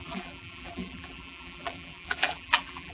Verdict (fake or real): fake